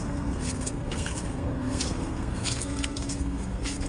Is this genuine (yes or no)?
no